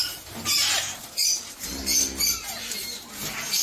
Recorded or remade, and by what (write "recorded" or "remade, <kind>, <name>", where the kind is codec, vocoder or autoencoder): recorded